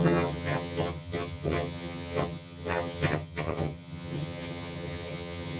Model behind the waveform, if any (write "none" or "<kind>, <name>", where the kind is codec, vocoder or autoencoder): vocoder, HiFi-GAN